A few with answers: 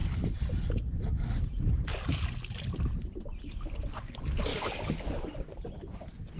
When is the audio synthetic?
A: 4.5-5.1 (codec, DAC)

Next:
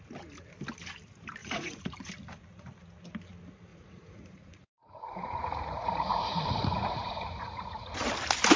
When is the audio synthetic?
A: 1.4-2.1 (vocoder, Vocos); 3.7-8.1

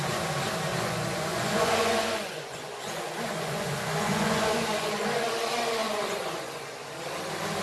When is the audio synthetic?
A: 0.7-5.3 (vocoder, Vocos); 5.8-6.9

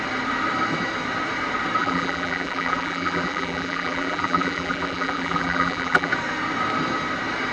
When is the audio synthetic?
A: 1.8-6.1 (vocoder, BigVGAN v2)